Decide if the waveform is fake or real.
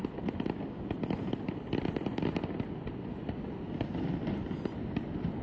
fake